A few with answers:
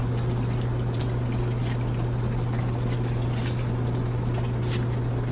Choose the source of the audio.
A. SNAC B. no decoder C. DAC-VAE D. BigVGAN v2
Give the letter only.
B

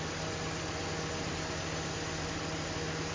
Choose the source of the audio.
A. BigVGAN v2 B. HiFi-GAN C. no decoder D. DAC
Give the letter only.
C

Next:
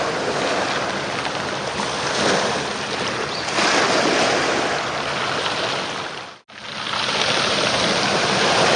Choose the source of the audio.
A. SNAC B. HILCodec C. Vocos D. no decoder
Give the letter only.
D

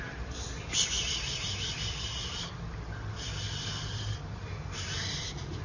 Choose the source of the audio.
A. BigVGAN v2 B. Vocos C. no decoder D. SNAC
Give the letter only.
A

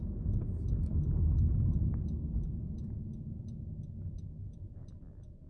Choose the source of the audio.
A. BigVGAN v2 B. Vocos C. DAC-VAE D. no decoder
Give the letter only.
D